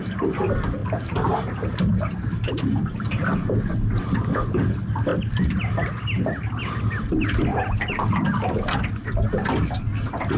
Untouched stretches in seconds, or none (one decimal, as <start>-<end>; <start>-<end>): 0.0-0.8; 1.3-5.1; 5.6-7.5; 8.6-10.4